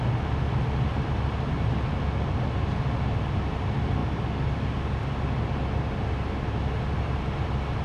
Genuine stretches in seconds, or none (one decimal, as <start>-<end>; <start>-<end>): 0.0-7.8